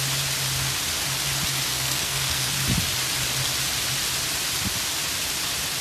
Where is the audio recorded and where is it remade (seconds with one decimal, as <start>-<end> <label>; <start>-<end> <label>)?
0.0-1.7 recorded; 1.7-2.5 remade; 2.5-5.8 recorded